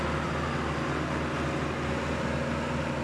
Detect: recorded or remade recorded